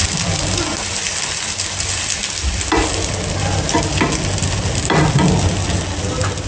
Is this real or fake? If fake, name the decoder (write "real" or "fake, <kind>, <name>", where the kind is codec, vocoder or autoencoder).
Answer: real